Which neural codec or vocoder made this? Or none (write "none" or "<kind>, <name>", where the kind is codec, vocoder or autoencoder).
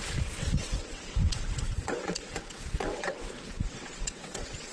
vocoder, WaveNeXt